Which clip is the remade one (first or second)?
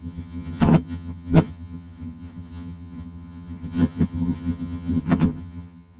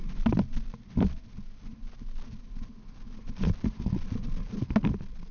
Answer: first